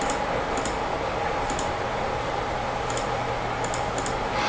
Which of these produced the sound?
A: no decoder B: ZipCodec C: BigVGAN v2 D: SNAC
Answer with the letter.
A